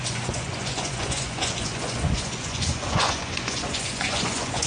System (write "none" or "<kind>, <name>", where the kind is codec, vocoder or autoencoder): vocoder, Vocos